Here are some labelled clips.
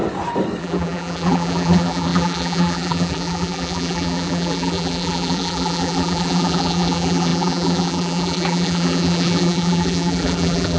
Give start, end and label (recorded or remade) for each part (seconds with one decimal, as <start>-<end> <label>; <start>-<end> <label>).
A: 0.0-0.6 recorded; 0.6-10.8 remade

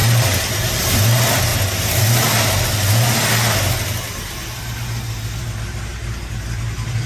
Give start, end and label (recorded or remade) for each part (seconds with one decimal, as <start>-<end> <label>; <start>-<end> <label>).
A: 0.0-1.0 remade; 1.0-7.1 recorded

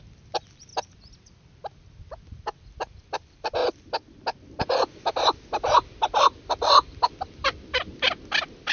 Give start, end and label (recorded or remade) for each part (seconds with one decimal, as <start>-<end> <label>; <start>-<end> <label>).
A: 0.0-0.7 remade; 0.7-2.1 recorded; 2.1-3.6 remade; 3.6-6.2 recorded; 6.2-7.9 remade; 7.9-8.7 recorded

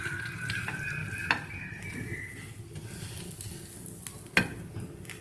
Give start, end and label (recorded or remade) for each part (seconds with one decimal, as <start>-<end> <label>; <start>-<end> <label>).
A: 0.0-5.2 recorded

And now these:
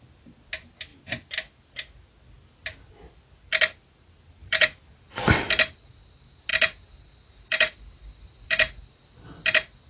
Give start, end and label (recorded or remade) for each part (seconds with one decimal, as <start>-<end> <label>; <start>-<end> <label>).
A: 0.0-4.4 recorded; 4.4-5.3 remade; 5.3-6.5 recorded; 6.5-8.8 remade; 8.8-9.9 recorded

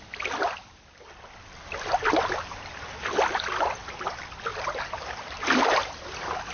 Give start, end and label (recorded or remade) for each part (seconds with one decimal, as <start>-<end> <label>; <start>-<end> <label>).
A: 0.0-4.5 recorded; 4.5-5.4 remade; 5.4-6.5 recorded

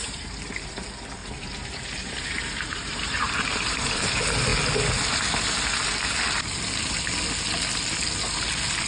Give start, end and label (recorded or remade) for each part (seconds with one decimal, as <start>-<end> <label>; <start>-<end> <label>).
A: 0.0-0.7 remade; 0.7-1.2 recorded; 1.2-4.1 remade; 4.1-8.9 recorded

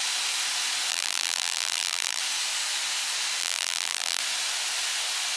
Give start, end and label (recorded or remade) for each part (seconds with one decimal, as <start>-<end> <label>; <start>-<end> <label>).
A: 0.0-0.9 recorded; 0.9-2.2 remade; 2.2-3.4 recorded; 3.4-4.2 remade; 4.2-5.4 recorded